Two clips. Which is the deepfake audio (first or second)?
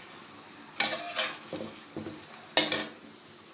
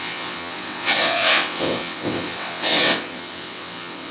second